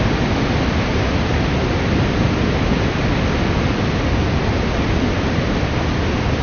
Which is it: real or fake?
real